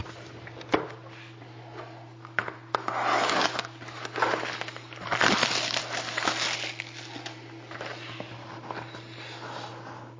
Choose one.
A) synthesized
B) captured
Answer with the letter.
B